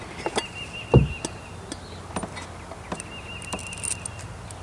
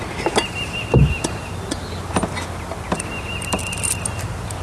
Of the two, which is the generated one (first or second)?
second